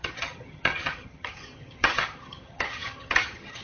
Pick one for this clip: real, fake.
fake